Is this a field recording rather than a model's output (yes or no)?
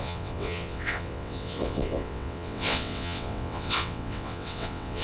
no